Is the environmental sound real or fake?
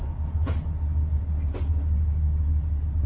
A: real